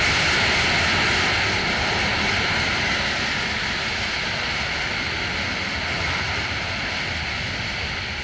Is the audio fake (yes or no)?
no